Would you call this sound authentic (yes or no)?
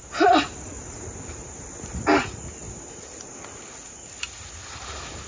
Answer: yes